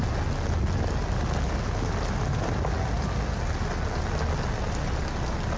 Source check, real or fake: real